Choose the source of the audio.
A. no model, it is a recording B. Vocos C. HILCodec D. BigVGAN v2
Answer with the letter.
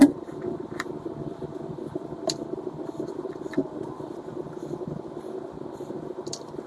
D